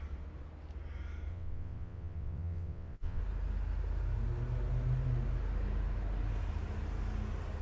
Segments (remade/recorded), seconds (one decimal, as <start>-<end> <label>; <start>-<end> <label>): 0.0-1.3 recorded; 1.3-3.2 remade; 3.2-7.6 recorded